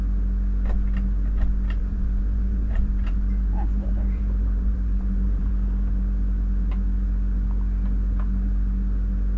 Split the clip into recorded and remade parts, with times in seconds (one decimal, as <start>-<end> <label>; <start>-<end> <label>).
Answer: 0.0-1.8 recorded; 1.8-5.5 remade; 5.5-9.4 recorded